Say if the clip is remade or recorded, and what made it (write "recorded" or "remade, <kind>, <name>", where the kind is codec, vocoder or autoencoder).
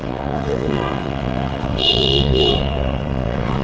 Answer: remade, vocoder, WaveNeXt